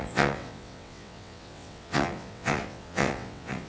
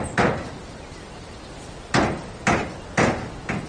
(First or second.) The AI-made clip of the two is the first